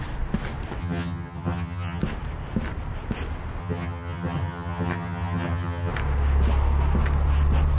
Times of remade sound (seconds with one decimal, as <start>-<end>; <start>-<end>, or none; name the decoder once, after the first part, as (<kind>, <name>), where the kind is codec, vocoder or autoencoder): 0.8-2.0 (vocoder, HiFi-GAN); 3.6-5.9